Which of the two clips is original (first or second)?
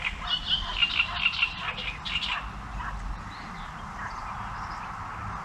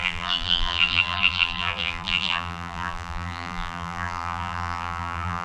first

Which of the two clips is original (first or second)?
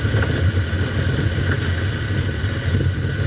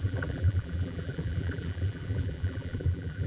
first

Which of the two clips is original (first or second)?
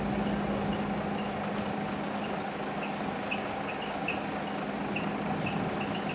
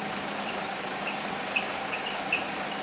first